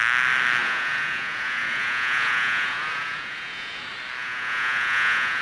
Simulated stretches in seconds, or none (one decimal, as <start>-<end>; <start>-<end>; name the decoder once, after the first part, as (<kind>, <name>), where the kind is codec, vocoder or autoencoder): 0.6-3.8 (vocoder, Vocos); 4.2-5.4